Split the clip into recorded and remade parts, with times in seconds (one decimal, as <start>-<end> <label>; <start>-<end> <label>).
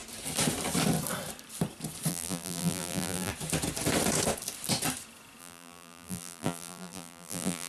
0.0-2.1 recorded; 2.1-3.3 remade; 3.3-5.4 recorded; 5.4-7.7 remade